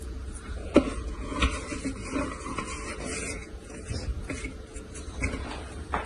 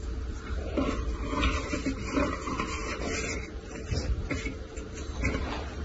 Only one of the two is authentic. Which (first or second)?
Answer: second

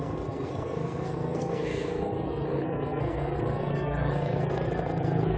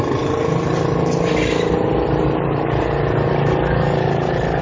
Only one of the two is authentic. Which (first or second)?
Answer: second